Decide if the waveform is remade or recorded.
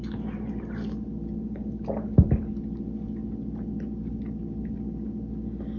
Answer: recorded